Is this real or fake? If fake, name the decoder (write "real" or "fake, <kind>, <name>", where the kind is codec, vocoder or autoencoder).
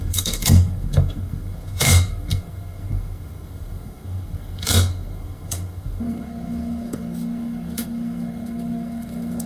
fake, codec, SNAC